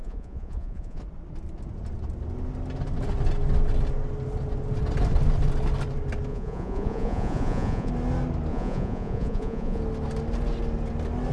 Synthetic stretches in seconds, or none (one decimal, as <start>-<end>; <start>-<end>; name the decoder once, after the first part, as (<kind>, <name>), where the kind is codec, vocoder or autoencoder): 0.0-1.0 (vocoder, Vocos); 6.3-7.9; 8.5-9.8